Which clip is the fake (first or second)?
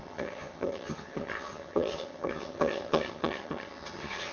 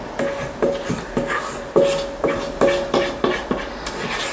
first